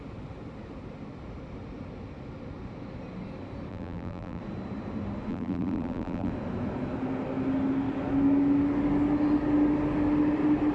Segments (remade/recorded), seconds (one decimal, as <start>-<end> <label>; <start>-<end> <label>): 0.0-3.7 recorded; 3.7-4.4 remade; 4.4-5.3 recorded; 5.3-6.3 remade; 6.3-10.7 recorded